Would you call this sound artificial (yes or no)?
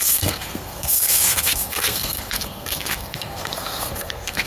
yes